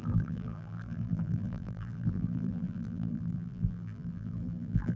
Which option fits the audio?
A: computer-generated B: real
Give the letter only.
A